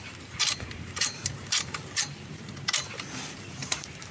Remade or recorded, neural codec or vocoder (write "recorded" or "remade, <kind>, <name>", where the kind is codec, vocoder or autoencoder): remade, vocoder, BigVGAN v2